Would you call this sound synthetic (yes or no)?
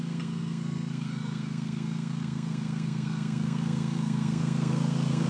yes